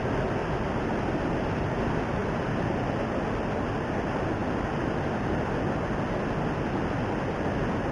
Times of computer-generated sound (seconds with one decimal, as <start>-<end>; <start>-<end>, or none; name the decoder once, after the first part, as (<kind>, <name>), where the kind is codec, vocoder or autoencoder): 0.4-1.3 (vocoder, BigVGAN v2)